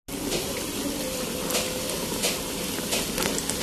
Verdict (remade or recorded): recorded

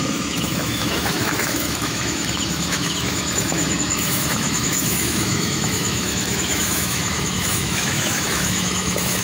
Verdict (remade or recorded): remade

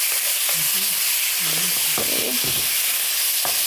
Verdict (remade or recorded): recorded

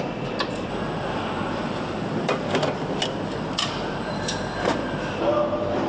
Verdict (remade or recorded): recorded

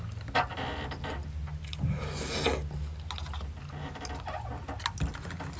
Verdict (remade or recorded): recorded